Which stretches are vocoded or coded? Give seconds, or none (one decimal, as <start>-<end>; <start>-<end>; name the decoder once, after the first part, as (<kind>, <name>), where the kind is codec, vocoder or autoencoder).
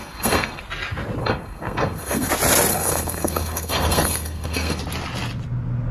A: 0.0-0.6 (codec, SNAC); 1.2-2.3; 2.7-4.8